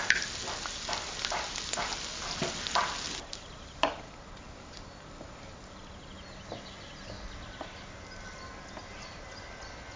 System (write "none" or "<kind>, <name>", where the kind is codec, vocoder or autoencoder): none